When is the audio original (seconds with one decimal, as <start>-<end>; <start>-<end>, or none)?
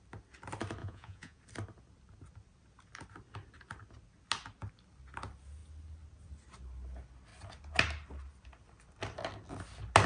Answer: 0.0-0.8; 1.4-10.1